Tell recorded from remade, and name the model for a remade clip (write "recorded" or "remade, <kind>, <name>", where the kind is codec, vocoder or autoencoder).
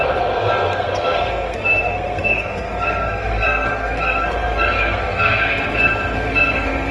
remade, codec, SNAC